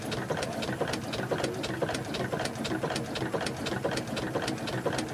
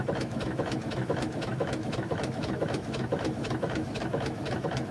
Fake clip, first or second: second